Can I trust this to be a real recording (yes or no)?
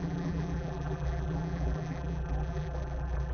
no